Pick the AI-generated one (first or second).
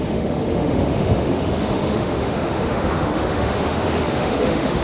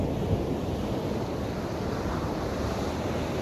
first